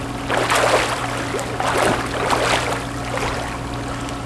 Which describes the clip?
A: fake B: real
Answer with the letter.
B